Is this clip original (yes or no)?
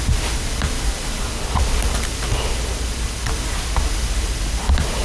yes